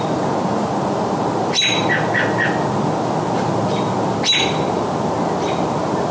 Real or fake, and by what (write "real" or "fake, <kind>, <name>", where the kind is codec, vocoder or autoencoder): real